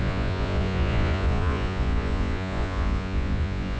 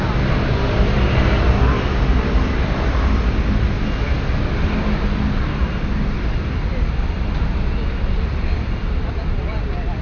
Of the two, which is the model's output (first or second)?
first